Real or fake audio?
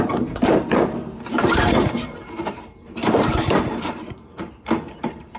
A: fake